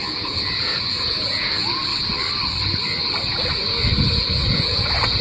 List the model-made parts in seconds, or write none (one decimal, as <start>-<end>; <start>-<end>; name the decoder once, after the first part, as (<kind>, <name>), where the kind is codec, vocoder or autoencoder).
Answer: 0.0-1.9 (vocoder, Vocos); 4.0-5.2